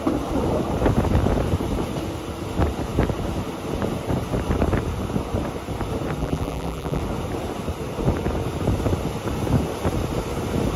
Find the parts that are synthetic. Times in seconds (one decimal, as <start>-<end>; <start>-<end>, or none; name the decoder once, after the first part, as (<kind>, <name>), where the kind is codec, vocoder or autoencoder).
6.2-7.0 (vocoder, BigVGAN v2)